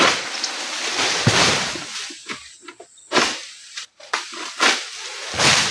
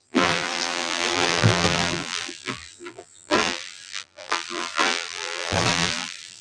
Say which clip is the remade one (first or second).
second